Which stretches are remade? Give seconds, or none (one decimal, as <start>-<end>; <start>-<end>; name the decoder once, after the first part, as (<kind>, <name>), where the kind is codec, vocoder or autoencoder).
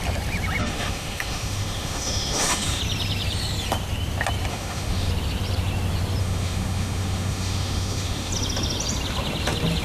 0.6-2.8 (autoencoder, DAC-VAE); 4.5-5.1; 6.2-8.3